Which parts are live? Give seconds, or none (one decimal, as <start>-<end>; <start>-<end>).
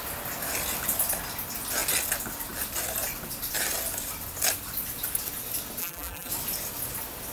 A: 0.0-5.8; 6.3-7.3